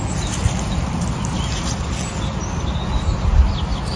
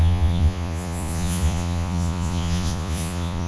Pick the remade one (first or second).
second